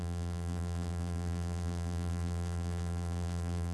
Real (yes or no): no